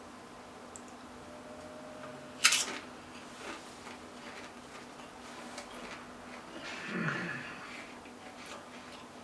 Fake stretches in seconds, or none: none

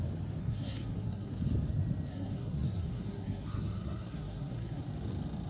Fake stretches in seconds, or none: 0.4-1.3 (codec, SNAC); 2.1-4.8

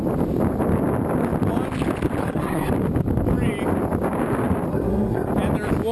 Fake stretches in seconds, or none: 2.2-2.7 (codec, SNAC); 4.7-5.3

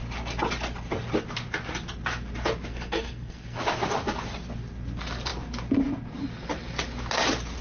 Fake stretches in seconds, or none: 2.7-3.6 (codec, SNAC)

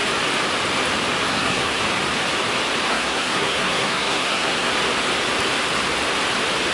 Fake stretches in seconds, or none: 1.3-1.8 (codec, SNAC); 2.9-4.7